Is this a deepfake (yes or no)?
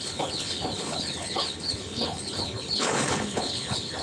yes